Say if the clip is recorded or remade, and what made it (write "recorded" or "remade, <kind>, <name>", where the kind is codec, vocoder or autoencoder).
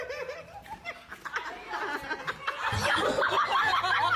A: recorded